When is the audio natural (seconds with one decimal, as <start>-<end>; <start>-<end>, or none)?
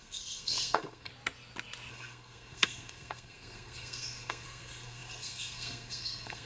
1.1-1.9